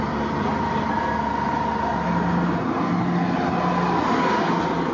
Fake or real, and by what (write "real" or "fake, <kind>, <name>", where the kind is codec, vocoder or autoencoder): real